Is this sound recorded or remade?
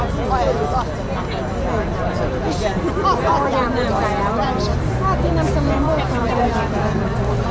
recorded